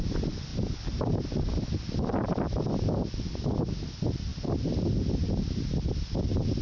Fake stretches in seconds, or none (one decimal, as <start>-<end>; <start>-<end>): none